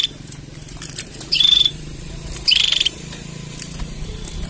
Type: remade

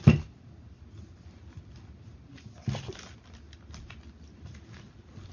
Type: recorded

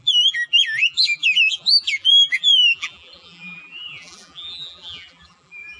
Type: remade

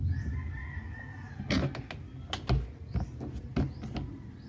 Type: recorded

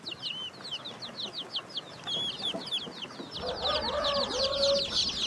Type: recorded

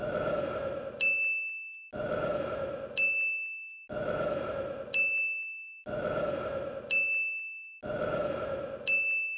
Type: recorded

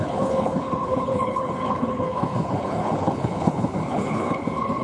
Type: remade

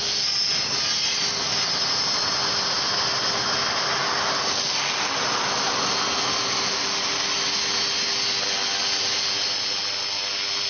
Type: recorded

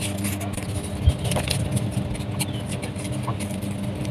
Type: recorded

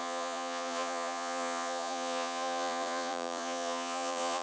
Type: remade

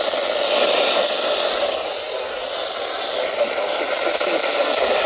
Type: recorded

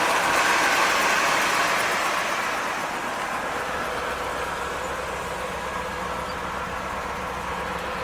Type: recorded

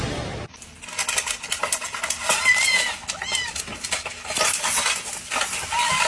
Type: recorded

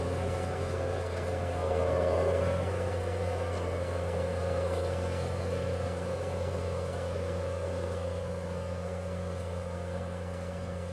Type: remade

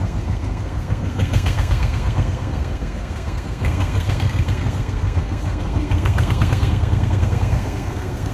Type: remade